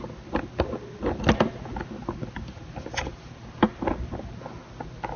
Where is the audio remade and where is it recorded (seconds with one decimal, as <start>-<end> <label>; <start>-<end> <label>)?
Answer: 0.0-5.2 recorded